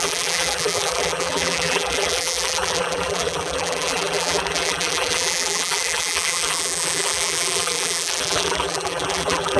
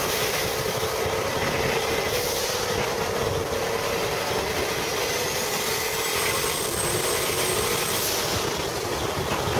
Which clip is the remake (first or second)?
first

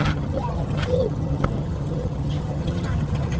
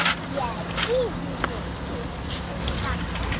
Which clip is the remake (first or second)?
first